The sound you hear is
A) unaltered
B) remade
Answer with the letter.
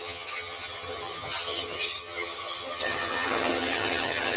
B